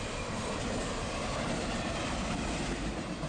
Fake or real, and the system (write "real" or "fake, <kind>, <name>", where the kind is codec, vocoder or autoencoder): real